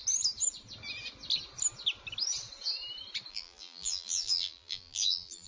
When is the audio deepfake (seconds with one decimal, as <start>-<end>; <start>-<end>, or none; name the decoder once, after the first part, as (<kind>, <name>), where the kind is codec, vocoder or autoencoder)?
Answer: 3.3-5.5 (vocoder, BigVGAN v2)